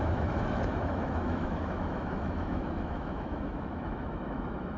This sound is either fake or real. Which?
fake